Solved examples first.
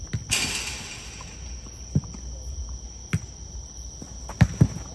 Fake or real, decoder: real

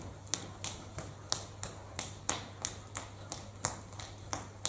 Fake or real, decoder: real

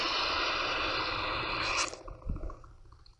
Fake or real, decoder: real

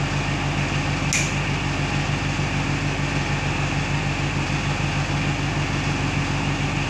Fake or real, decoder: real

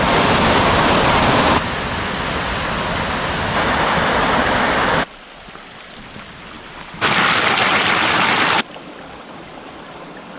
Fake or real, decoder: real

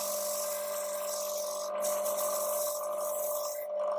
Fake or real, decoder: real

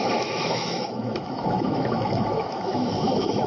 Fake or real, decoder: fake, autoencoder, DAC-VAE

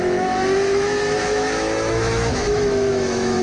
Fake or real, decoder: fake, autoencoder, DAC-VAE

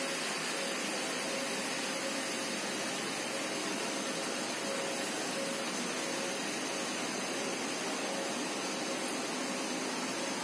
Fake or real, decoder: real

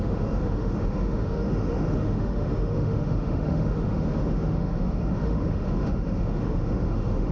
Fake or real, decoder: fake, autoencoder, DAC-VAE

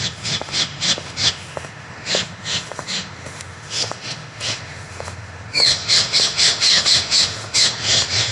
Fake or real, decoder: fake, autoencoder, DAC-VAE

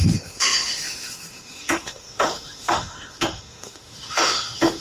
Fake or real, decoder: fake, autoencoder, DAC-VAE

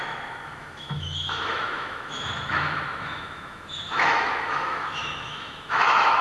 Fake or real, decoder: fake, autoencoder, DAC-VAE